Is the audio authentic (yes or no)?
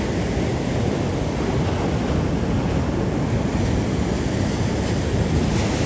yes